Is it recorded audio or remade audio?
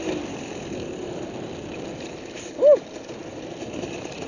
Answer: recorded